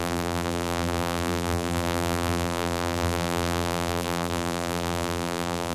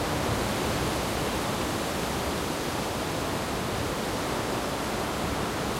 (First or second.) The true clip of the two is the second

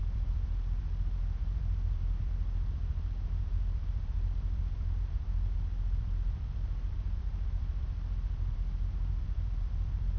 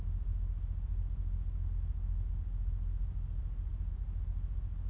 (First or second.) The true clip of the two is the second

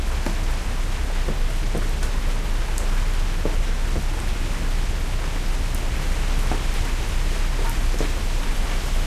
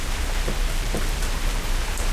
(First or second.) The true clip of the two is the first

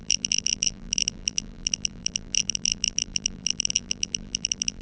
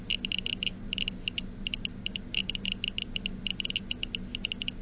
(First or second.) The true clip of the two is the second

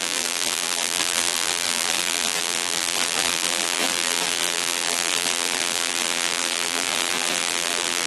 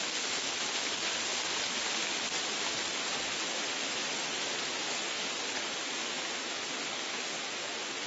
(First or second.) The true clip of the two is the second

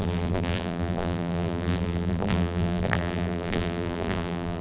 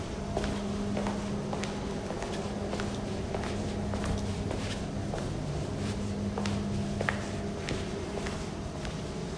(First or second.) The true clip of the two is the second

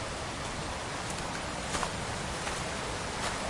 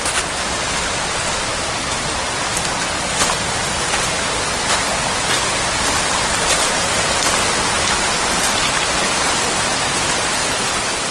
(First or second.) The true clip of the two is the second